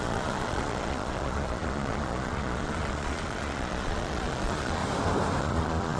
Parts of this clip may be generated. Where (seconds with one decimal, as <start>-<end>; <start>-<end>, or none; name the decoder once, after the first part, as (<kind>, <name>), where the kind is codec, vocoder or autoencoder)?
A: 0.0-4.8 (vocoder, Vocos); 5.4-6.0